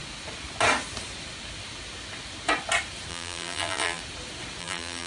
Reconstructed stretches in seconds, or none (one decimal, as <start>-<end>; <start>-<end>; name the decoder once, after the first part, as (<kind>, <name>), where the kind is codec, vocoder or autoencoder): 3.1-4.0 (vocoder, BigVGAN v2); 4.6-5.1